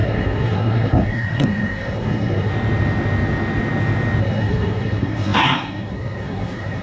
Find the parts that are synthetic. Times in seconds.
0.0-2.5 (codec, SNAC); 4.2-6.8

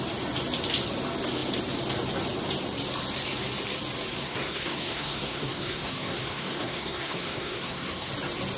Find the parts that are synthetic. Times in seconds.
4.2-8.1 (codec, SNAC)

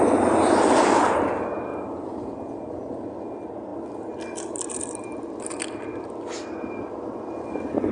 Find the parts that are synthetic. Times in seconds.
none

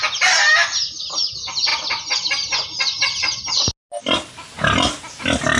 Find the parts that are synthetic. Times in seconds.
none